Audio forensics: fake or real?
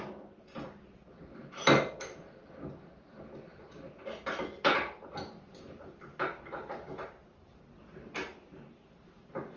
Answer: real